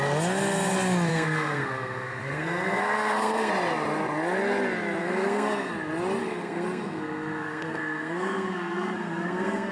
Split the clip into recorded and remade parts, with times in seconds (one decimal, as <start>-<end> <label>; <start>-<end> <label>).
0.0-1.1 recorded; 1.1-3.5 remade; 3.5-5.0 recorded; 5.0-5.7 remade; 5.7-6.2 recorded; 6.2-9.7 remade